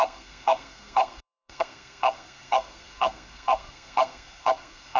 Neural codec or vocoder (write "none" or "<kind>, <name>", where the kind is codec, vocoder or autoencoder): codec, SNAC